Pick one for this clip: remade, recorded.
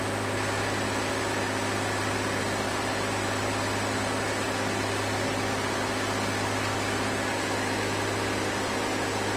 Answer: recorded